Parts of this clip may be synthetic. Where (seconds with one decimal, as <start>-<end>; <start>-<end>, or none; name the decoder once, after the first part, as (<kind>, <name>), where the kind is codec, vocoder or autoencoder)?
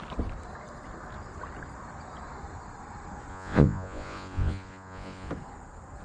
3.3-5.3 (vocoder, Vocos)